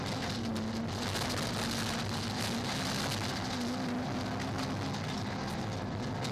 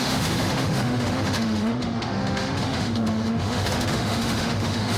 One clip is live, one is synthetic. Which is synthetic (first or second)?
second